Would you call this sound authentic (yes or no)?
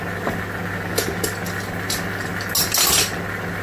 yes